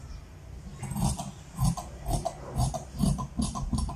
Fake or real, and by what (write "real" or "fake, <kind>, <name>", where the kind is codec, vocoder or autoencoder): real